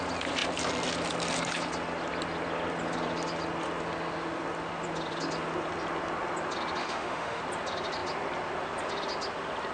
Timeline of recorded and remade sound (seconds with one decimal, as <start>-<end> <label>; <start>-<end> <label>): 0.0-6.8 recorded; 6.8-7.4 remade; 7.4-9.7 recorded